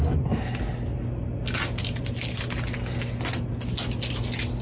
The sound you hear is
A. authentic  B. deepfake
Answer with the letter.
A